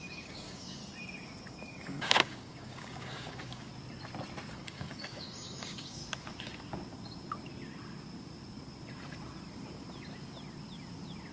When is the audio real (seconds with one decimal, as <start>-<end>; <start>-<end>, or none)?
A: 0.8-1.5; 3.7-4.5; 6.0-11.3